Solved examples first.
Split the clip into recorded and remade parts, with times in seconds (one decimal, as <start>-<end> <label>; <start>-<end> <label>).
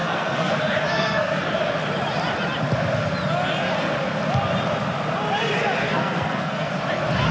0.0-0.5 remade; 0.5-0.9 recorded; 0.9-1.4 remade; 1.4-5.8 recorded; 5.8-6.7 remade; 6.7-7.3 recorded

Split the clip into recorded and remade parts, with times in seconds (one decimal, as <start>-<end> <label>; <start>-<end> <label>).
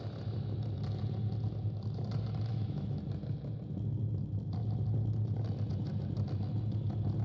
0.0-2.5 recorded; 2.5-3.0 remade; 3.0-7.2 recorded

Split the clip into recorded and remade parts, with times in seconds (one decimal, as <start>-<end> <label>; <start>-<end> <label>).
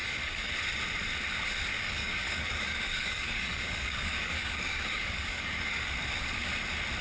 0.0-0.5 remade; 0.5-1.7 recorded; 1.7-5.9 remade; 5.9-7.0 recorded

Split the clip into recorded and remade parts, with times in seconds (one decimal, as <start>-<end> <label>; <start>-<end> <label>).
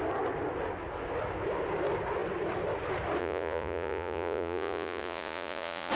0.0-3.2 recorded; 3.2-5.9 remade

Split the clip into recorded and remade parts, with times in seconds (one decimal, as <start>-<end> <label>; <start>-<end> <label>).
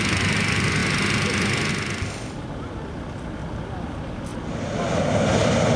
0.0-4.3 recorded; 4.3-4.8 remade; 4.8-5.8 recorded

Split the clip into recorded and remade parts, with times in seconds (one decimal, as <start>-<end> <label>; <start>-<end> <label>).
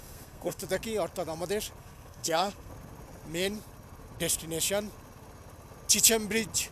0.0-0.6 remade; 0.6-1.8 recorded; 1.8-2.7 remade; 2.7-6.7 recorded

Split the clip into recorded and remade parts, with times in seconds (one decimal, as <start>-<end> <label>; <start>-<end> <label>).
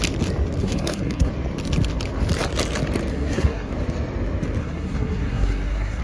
0.0-0.6 recorded; 0.6-1.3 remade; 1.3-3.1 recorded; 3.1-3.7 remade; 3.7-4.6 recorded; 4.6-6.0 remade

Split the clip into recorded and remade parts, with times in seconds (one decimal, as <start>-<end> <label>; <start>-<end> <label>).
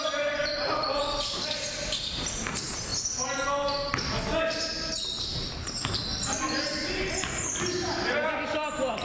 0.0-9.0 recorded